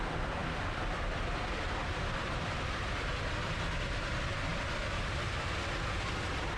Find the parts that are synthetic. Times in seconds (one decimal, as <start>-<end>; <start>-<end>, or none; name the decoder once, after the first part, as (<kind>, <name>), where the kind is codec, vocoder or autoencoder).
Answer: 0.4-3.1 (vocoder, BigVGAN v2)

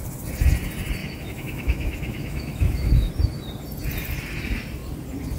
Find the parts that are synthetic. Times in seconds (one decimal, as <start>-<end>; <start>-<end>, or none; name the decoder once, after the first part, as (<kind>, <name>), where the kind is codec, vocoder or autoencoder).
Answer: 1.0-3.1 (autoencoder, DAC-VAE)

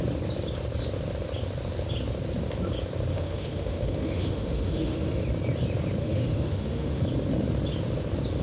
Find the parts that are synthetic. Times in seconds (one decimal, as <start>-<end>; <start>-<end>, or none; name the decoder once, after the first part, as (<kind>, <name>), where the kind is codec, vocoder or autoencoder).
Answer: 3.1-5.2 (autoencoder, DAC-VAE); 6.0-7.0

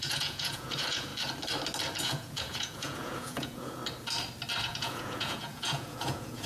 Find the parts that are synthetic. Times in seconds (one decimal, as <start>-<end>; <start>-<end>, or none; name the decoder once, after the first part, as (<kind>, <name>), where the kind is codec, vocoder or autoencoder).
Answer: 0.0-1.1 (vocoder, Vocos); 2.0-3.8; 4.6-6.5